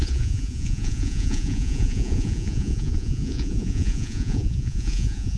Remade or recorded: remade